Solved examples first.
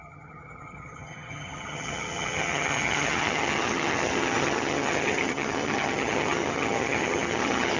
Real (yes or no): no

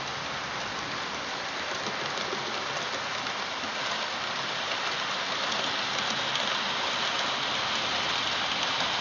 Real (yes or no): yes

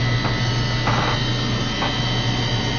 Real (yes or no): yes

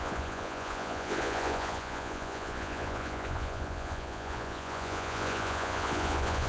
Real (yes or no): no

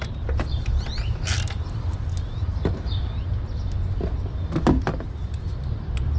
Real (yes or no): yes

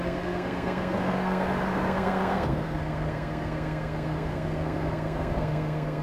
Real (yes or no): no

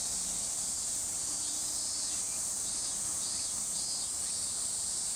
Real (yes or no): yes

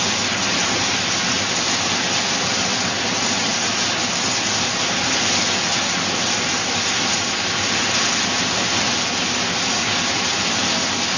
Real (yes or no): yes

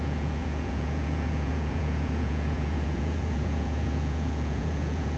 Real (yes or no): no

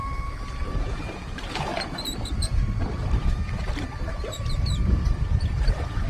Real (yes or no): no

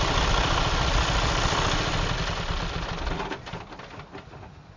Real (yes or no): yes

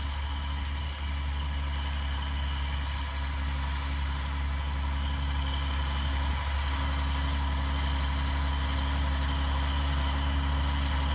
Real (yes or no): yes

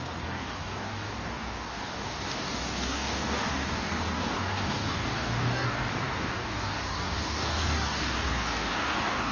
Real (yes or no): no